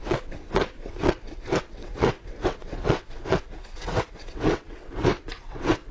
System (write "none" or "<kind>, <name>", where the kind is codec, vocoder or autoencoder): vocoder, WaveNeXt